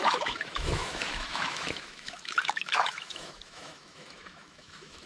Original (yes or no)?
no